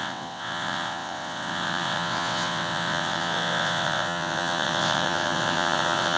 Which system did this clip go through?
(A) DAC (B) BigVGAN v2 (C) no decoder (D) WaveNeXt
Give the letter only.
D